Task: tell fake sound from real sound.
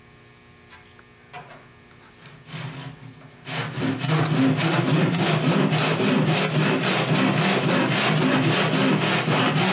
real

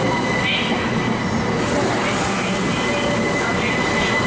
real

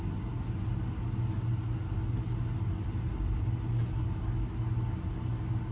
real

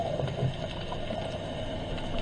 real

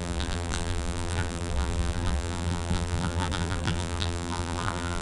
fake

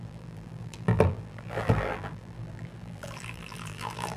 fake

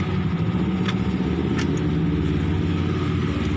real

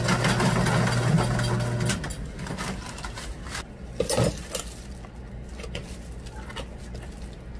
real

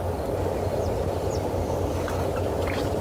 fake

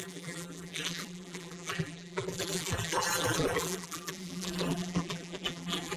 fake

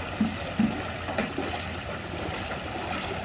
real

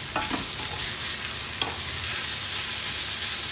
real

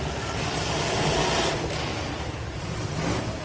fake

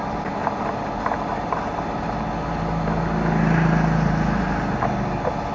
real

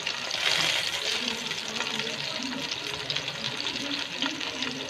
real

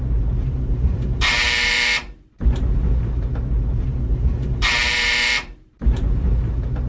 fake